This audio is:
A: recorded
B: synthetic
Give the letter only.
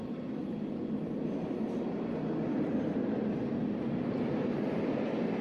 A